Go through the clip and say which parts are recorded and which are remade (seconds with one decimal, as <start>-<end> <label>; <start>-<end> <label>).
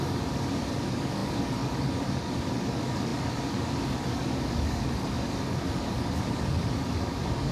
0.0-7.5 remade